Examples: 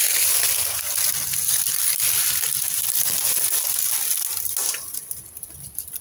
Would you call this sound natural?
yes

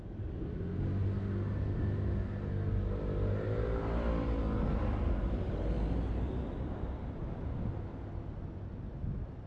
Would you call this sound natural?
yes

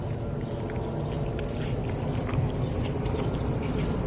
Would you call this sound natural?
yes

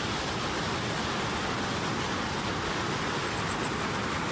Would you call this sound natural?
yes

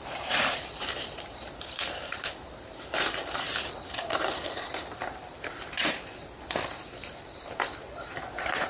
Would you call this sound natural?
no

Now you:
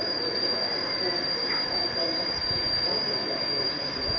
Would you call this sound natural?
no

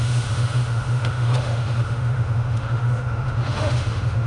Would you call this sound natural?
no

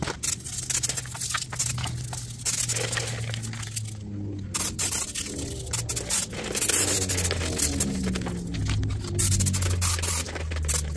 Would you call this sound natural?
yes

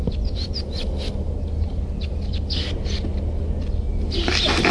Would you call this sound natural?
yes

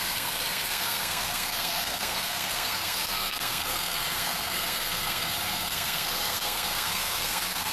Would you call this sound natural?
no